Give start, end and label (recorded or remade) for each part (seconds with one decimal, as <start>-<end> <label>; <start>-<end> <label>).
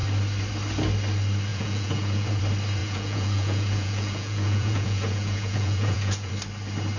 0.0-1.5 recorded; 1.5-2.4 remade; 2.4-2.8 recorded; 2.8-6.3 remade; 6.3-7.0 recorded